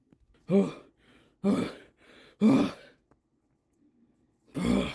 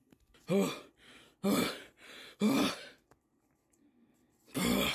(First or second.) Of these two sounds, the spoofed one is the second